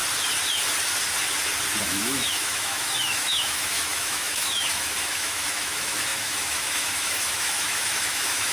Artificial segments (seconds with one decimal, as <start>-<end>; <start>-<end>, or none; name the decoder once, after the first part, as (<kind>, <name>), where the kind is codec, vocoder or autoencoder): 1.8-8.5 (autoencoder, DAC-VAE)

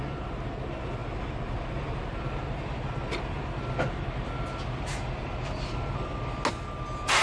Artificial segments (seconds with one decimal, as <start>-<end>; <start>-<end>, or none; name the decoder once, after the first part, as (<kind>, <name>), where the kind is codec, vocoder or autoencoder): none

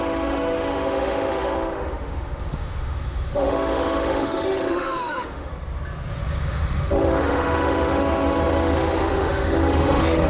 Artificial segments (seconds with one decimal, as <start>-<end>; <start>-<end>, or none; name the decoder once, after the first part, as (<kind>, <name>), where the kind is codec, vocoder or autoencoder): 0.0-5.5 (autoencoder, DAC-VAE); 6.4-10.3

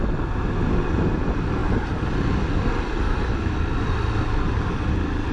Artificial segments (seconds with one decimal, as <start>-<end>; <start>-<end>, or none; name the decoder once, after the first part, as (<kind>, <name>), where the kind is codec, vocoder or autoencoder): none

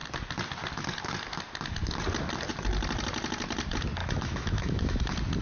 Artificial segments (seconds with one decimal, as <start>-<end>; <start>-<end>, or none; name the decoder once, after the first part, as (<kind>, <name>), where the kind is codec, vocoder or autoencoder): 4.0-5.0 (autoencoder, DAC-VAE)

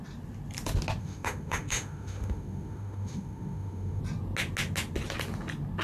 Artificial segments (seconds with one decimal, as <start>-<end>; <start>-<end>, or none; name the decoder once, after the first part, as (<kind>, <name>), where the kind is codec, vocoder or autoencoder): 1.0-4.0 (autoencoder, DAC-VAE)

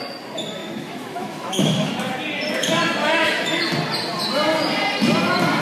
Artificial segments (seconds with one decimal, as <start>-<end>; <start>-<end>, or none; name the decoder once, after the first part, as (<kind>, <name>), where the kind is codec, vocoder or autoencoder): 0.6-1.9 (autoencoder, DAC-VAE); 3.0-3.6

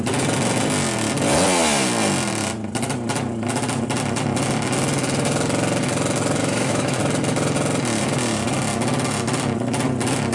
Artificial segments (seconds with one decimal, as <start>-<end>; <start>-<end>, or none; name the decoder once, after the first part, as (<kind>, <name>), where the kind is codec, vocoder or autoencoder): 6.4-7.0 (autoencoder, DAC-VAE)